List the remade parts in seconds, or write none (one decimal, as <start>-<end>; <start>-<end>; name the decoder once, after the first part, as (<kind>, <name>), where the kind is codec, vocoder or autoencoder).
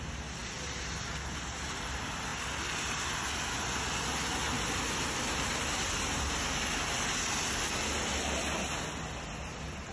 none